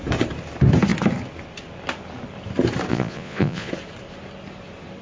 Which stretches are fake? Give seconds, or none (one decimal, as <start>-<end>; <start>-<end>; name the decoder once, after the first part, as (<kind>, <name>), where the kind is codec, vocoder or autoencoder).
2.9-3.7 (vocoder, Vocos)